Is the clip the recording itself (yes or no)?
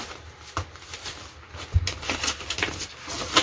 yes